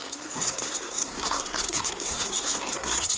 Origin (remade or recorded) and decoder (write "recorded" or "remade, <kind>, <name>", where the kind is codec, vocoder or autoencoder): remade, codec, SNAC